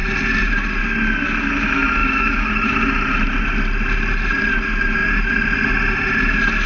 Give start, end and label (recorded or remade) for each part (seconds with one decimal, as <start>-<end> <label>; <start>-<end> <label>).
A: 0.0-2.0 recorded; 2.0-2.5 remade; 2.5-6.7 recorded